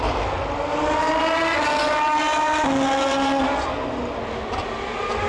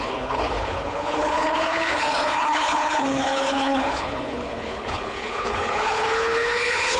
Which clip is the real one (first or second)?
first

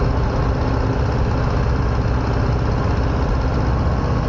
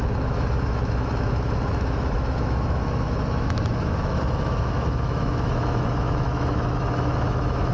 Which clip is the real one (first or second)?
first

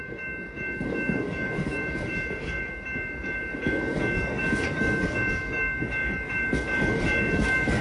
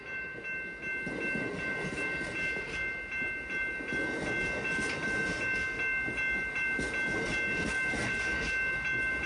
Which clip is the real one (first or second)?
second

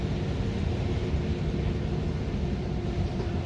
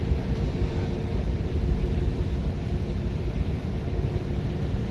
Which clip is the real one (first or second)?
first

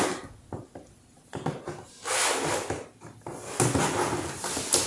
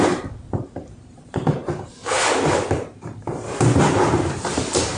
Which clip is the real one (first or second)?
first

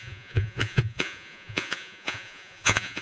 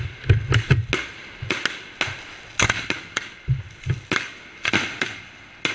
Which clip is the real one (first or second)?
second